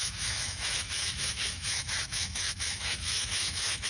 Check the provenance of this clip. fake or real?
fake